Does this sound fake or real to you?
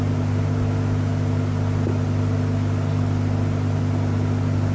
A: real